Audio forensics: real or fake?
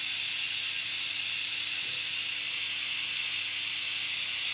real